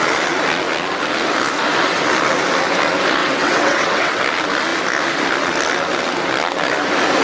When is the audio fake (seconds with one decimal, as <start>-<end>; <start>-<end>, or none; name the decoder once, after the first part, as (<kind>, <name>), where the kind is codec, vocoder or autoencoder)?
3.2-4.2 (vocoder, WaveNeXt)